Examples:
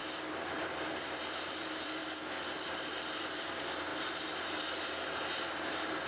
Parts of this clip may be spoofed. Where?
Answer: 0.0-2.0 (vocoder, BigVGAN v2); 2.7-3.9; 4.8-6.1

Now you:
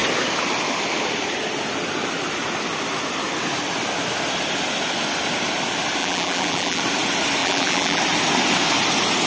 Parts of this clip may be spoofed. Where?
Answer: 6.0-6.8 (vocoder, BigVGAN v2); 7.4-8.0

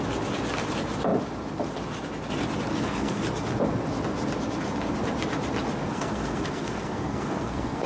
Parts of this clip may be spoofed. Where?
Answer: 2.7-3.2 (codec, SNAC); 5.9-7.9

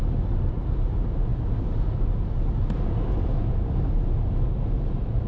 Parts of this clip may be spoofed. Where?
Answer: none

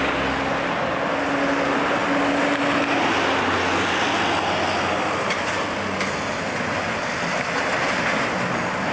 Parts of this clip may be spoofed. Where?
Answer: none

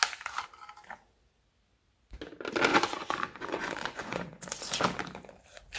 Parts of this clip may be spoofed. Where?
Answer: 2.7-4.8 (vocoder, Vocos)

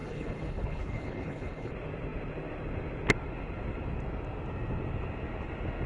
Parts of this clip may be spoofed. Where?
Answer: 0.0-1.7 (codec, HILCodec)